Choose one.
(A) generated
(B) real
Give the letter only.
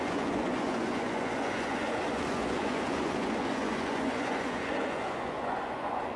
A